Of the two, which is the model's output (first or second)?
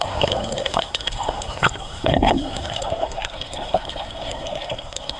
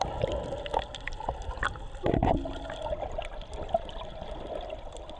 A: first